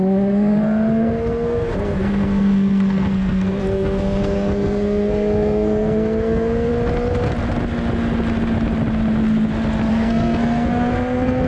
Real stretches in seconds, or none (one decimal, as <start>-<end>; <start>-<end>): 6.7-9.9